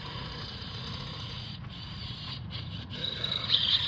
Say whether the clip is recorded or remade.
remade